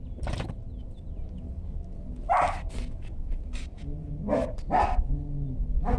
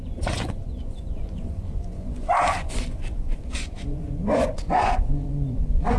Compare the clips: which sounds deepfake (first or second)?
second